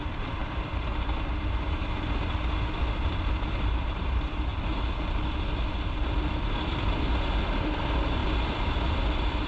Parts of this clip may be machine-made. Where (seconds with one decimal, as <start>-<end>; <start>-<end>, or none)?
0.0-0.4; 2.8-4.5; 5.9-9.5